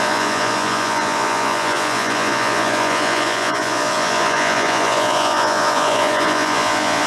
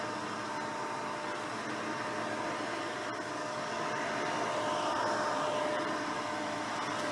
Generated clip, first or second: first